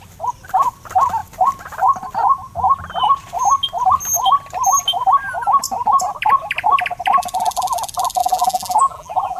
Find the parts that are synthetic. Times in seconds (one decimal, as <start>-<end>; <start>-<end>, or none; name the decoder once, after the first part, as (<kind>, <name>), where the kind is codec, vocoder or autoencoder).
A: 8.2-9.4 (vocoder, BigVGAN v2)